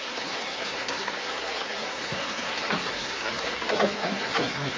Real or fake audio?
fake